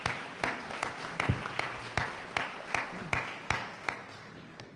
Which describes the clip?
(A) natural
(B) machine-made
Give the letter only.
A